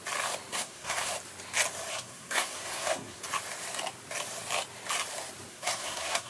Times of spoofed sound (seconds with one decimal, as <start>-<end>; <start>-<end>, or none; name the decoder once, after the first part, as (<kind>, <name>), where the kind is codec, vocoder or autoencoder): 0.5-1.1 (codec, SNAC); 1.9-3.2; 5.5-6.3